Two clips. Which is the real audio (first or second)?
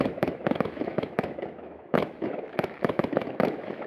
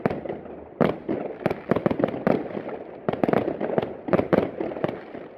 second